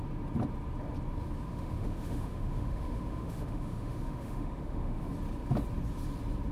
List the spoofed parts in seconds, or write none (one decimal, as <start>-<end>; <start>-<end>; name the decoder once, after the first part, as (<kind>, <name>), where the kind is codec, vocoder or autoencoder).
1.5-5.1 (autoencoder, DAC-VAE)